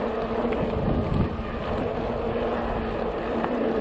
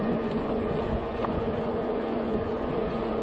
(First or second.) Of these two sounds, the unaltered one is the first